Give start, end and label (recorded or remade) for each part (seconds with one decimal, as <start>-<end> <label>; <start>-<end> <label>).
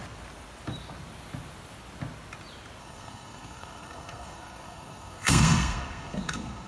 0.0-2.8 recorded; 2.8-6.7 remade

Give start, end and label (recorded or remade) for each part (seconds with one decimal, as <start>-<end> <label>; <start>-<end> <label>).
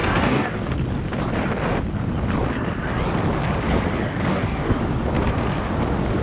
0.0-0.7 remade; 0.7-4.3 recorded; 4.3-4.8 remade; 4.8-6.2 recorded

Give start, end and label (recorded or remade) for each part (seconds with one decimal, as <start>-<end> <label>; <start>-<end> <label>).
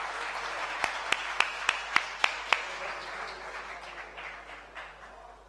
0.0-5.5 recorded